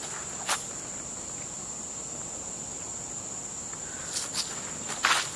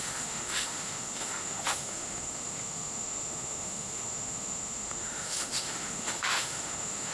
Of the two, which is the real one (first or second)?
first